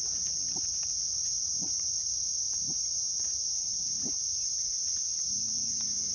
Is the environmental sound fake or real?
fake